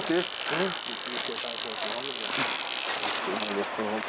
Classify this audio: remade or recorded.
recorded